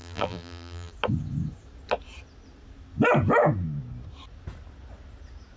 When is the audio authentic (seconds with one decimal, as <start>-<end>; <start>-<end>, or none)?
0.9-5.6

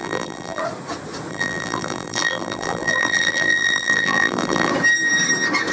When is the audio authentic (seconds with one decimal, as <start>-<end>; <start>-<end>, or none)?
0.6-1.3; 4.7-5.7

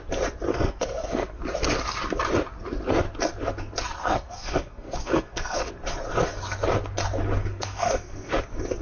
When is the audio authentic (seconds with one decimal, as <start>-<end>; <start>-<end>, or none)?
0.0-0.5; 1.4-4.0; 5.7-7.4; 8.3-8.8

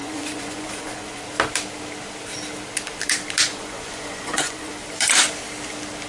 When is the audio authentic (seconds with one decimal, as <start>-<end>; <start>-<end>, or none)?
1.2-3.5; 4.7-6.1